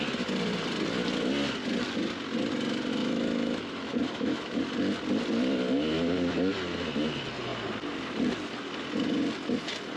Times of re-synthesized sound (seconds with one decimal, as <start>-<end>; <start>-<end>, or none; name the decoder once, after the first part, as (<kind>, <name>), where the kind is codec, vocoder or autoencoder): 3.0-4.6 (autoencoder, DAC-VAE)